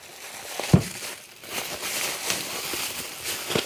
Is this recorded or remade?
recorded